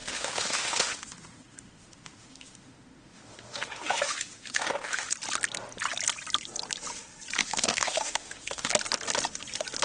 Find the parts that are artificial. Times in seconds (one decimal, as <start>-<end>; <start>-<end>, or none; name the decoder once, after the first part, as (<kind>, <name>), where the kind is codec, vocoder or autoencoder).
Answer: 0.0-5.1 (autoencoder, DAC-VAE); 7.4-8.7